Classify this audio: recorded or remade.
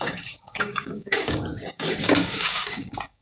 remade